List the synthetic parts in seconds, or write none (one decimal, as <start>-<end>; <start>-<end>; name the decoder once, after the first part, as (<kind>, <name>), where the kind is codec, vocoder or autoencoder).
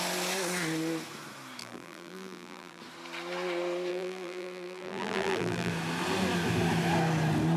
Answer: 1.6-2.8 (vocoder, BigVGAN v2); 3.9-5.7